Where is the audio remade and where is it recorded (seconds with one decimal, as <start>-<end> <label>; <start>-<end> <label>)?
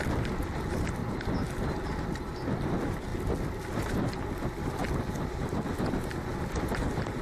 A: 0.0-1.0 remade; 1.0-2.6 recorded; 2.6-3.1 remade; 3.1-4.1 recorded; 4.1-7.2 remade